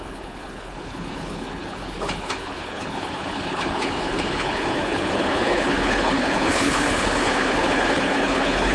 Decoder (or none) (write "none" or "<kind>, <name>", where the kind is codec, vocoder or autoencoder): codec, HILCodec